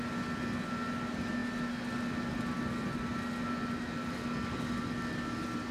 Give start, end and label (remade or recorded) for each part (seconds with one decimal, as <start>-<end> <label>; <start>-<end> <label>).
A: 0.0-5.7 recorded